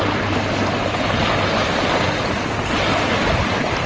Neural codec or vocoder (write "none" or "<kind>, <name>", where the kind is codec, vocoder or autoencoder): none